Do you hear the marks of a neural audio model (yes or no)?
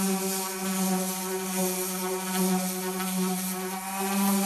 no